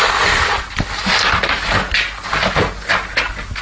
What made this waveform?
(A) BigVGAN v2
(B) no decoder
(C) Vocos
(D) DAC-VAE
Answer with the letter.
B